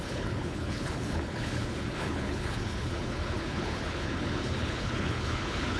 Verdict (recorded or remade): remade